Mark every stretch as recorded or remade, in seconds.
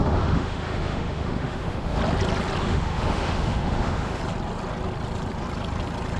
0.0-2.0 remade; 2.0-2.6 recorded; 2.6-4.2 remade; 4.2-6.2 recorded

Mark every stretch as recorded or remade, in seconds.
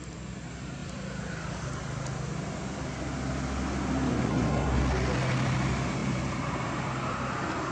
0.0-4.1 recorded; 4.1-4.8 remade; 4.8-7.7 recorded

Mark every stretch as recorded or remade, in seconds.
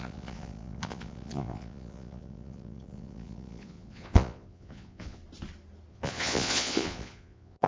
0.0-5.2 remade; 5.2-5.9 recorded; 5.9-7.7 remade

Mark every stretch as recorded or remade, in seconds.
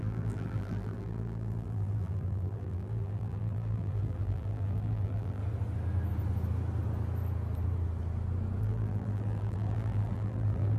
0.0-5.4 remade; 5.4-8.6 recorded; 8.6-10.8 remade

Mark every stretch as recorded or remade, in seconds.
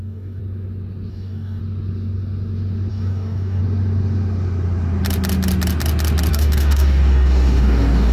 0.0-0.4 remade; 0.4-1.1 recorded; 1.1-1.6 remade; 1.6-2.9 recorded; 2.9-3.6 remade; 3.6-6.3 recorded; 6.3-8.1 remade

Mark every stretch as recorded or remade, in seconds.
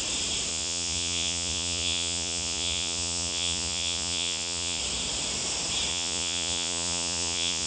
0.0-0.5 recorded; 0.5-4.8 remade; 4.8-5.9 recorded; 5.9-7.7 remade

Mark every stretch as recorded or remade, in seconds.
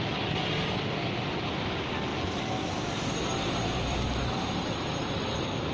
0.0-2.1 recorded; 2.1-5.0 remade; 5.0-5.7 recorded